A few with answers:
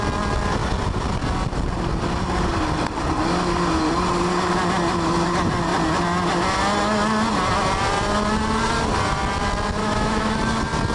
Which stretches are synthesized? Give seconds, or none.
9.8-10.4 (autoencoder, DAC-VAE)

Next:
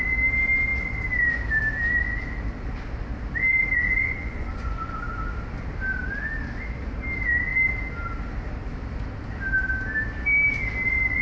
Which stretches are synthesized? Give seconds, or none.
4.0-5.1 (vocoder, Vocos)

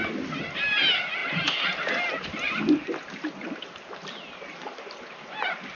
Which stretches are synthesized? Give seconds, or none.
none

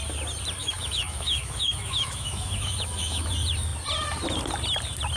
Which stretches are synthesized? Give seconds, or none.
0.6-3.3 (autoencoder, DAC-VAE)

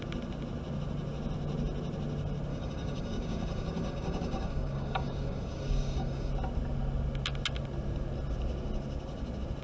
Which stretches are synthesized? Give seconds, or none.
2.5-6.3 (codec, DAC)

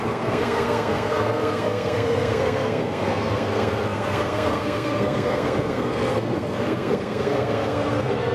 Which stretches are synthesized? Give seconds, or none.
0.0-8.3 (codec, SNAC)

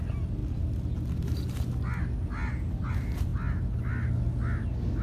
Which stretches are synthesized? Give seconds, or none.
none